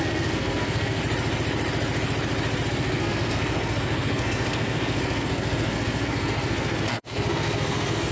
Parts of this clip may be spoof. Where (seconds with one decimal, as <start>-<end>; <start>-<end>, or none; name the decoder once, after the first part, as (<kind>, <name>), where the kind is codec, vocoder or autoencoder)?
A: 0.0-1.0 (codec, SNAC); 2.7-8.1